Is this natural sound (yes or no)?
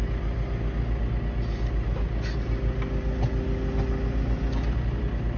yes